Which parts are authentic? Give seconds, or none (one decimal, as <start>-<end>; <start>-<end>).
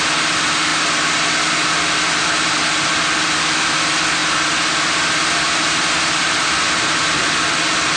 0.0-4.2; 5.9-8.0